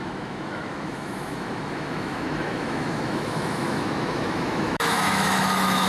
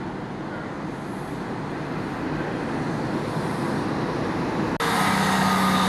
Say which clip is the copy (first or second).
first